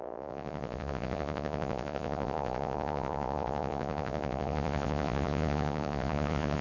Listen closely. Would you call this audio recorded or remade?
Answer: remade